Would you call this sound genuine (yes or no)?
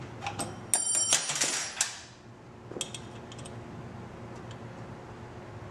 yes